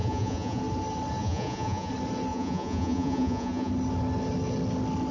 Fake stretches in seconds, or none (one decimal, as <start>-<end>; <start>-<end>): 0.0-0.6; 1.2-1.9; 2.3-3.7

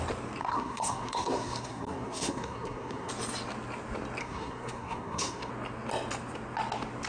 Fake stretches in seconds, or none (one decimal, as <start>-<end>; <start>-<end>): 0.4-3.1; 4.2-5.5